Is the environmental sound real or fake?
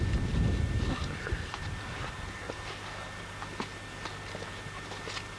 real